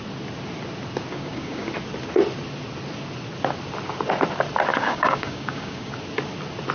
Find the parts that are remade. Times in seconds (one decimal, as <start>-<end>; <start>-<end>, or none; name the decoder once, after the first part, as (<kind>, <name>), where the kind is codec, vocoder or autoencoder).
1.1-1.7 (codec, DAC); 4.7-5.9